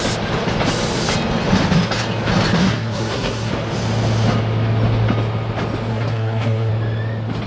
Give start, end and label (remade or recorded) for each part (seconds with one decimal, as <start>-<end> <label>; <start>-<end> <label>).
0.0-2.6 recorded; 2.6-3.5 remade; 3.5-5.9 recorded; 5.9-6.7 remade; 6.7-7.5 recorded